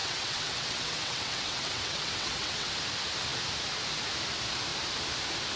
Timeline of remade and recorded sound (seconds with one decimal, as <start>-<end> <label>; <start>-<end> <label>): 0.0-2.7 remade; 2.7-5.6 recorded